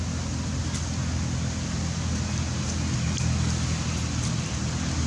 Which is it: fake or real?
real